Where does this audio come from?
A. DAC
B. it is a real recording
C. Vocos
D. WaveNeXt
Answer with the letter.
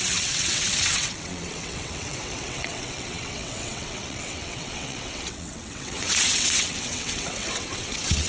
D